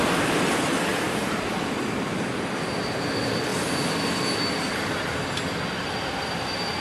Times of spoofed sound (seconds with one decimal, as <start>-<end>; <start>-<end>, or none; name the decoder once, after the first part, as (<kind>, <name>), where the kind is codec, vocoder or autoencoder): 0.9-1.5 (vocoder, BigVGAN v2)

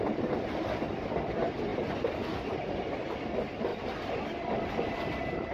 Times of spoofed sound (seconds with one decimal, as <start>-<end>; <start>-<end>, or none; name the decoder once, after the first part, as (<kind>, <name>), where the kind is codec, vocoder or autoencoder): 1.7-2.2 (vocoder, BigVGAN v2); 3.7-4.2

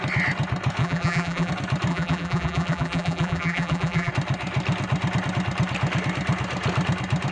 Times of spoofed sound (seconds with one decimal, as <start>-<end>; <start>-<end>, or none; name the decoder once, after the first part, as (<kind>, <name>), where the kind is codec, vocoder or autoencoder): 0.8-1.5 (vocoder, BigVGAN v2); 1.9-4.1

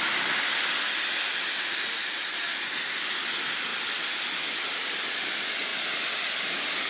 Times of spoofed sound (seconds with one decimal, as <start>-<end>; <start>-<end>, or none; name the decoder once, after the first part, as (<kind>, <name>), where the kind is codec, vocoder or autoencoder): none

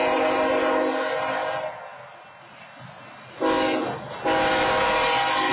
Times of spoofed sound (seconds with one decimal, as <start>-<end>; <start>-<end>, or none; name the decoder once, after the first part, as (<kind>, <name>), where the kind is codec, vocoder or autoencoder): none